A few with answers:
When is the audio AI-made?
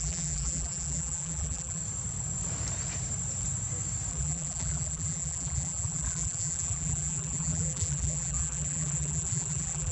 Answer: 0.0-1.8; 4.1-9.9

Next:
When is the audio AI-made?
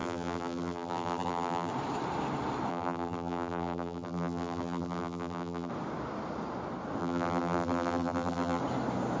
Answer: 0.0-1.7; 2.7-5.7; 7.0-8.6